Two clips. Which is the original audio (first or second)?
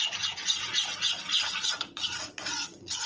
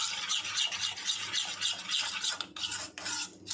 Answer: second